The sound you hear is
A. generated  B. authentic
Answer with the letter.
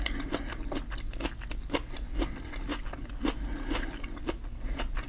B